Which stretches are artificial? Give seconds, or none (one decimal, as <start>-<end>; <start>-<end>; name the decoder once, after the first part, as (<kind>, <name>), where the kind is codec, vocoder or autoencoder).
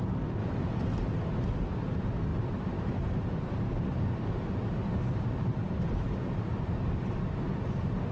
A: 0.4-1.8 (vocoder, BigVGAN v2); 2.3-7.2